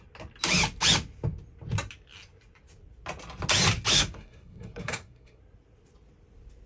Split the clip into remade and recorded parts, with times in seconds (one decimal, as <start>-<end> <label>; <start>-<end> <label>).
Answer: 0.0-3.9 recorded; 3.9-5.4 remade; 5.4-6.7 recorded